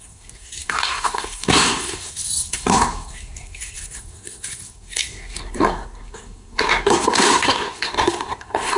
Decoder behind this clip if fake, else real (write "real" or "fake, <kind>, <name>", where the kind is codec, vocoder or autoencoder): fake, codec, SNAC